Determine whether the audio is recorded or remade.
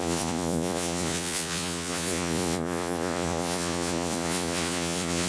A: remade